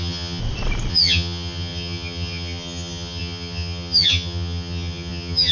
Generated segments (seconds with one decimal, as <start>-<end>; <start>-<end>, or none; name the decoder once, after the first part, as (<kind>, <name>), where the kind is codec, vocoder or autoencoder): 0.0-0.4 (vocoder, HiFi-GAN); 0.9-5.5